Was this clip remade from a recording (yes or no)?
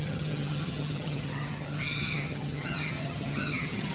yes